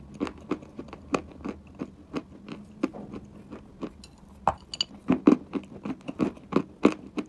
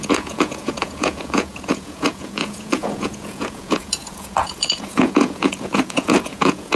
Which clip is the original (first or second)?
first